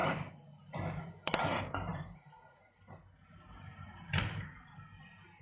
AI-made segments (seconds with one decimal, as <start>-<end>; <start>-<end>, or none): 1.9-4.5